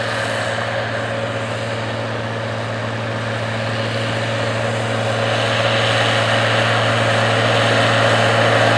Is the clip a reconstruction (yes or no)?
no